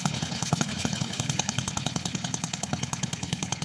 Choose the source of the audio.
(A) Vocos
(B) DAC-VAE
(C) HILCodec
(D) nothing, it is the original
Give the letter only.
C